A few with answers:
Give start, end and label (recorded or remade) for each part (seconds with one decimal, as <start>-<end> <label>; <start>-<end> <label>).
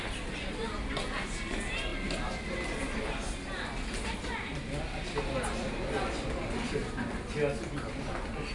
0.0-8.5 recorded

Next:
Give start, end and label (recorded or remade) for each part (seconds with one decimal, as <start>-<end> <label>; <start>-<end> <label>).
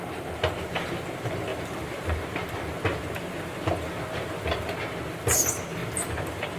0.0-1.5 recorded; 1.5-2.2 remade; 2.2-2.9 recorded; 2.9-3.7 remade; 3.7-5.8 recorded; 5.8-6.6 remade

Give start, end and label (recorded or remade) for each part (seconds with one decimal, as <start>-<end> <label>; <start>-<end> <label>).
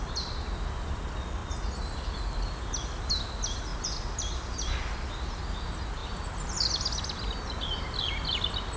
0.0-8.8 recorded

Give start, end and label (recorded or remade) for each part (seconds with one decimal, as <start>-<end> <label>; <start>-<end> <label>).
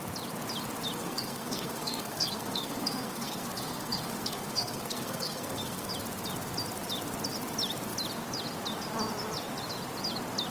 0.0-1.0 recorded; 1.0-5.9 remade; 5.9-10.5 recorded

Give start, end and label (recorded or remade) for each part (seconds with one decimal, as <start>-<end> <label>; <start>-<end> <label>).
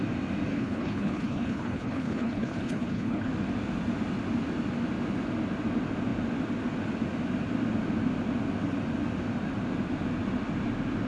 0.0-0.5 recorded; 0.5-3.3 remade; 3.3-11.1 recorded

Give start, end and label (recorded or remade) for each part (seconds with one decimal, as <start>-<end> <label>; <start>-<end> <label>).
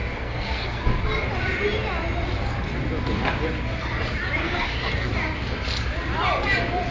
0.0-0.8 remade; 0.8-4.4 recorded; 4.4-5.1 remade; 5.1-6.9 recorded